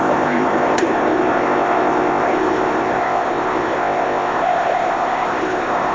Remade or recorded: remade